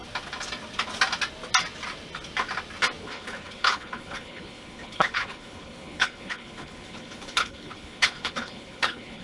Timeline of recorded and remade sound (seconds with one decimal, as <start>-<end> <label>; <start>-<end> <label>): 0.0-3.0 recorded; 3.0-9.2 remade